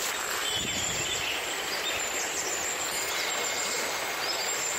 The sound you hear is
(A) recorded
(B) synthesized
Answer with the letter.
A